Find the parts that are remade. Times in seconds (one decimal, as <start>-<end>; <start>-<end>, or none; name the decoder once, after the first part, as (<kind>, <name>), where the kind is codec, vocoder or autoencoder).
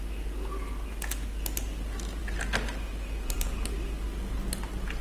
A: none